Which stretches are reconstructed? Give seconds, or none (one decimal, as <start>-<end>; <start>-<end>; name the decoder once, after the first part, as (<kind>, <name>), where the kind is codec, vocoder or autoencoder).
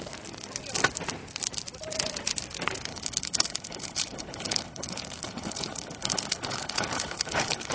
2.9-7.7 (codec, HILCodec)